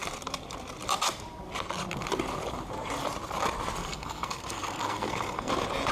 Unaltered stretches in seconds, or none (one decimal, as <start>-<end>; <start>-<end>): 0.0-3.8; 5.5-5.9